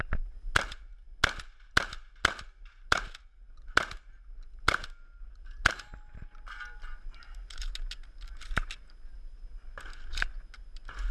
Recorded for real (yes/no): yes